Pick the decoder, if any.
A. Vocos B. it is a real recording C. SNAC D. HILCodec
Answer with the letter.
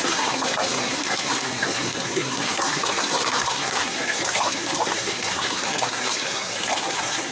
C